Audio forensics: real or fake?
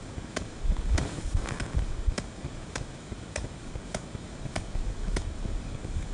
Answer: fake